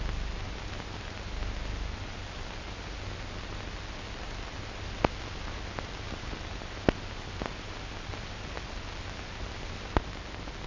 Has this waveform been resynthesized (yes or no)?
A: no